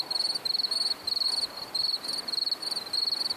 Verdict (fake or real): real